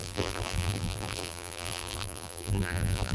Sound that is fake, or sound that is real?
fake